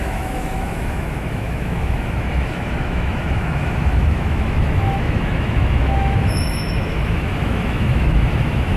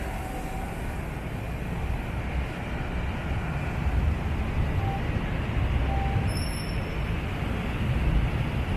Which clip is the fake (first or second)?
first